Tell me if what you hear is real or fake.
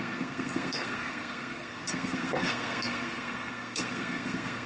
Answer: fake